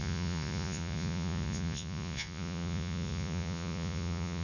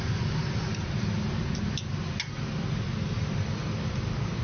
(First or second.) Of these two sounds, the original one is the second